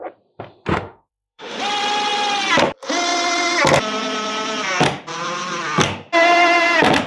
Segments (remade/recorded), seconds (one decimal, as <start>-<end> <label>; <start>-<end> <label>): 0.0-0.7 recorded; 0.7-1.6 remade; 1.6-7.1 recorded